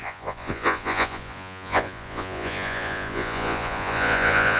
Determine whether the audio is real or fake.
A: fake